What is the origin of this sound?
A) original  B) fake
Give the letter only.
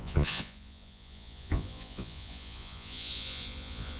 B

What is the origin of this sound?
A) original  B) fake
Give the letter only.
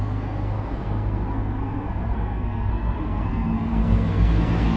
B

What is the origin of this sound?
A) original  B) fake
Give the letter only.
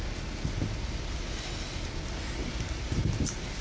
A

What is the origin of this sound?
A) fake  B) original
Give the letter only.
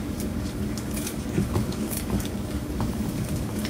A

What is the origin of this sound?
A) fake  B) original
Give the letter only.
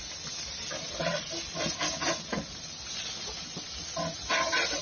B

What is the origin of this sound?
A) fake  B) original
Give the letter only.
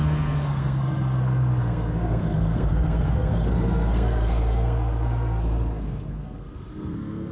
A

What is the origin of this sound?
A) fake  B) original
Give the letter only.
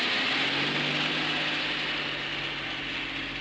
B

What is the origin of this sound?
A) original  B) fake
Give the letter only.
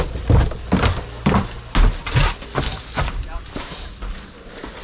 A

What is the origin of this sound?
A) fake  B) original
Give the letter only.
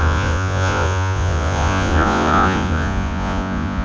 A